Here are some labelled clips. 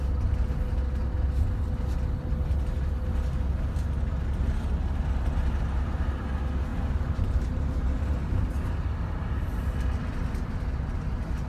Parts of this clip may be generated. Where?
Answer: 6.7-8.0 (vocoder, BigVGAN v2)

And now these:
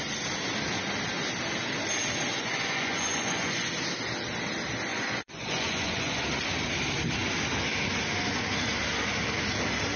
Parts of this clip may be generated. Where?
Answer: 2.3-3.7 (vocoder, Vocos); 4.9-6.2

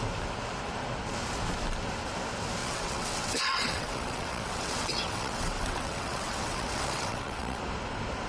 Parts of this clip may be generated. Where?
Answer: 2.6-7.6 (vocoder, WaveNeXt)

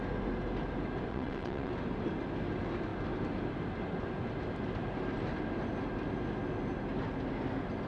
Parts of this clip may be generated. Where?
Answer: 1.1-1.7 (vocoder, WaveNeXt)

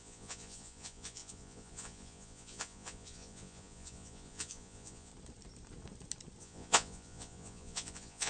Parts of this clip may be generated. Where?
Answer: 0.0-5.1 (vocoder, Vocos); 6.4-8.3

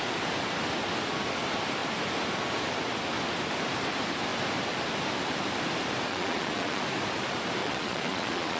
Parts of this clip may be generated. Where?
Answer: 6.1-6.8 (vocoder, Vocos); 7.6-8.6